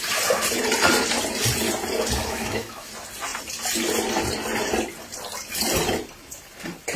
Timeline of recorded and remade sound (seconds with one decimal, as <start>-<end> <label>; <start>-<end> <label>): 0.0-2.2 recorded; 2.2-2.9 remade; 2.9-7.0 recorded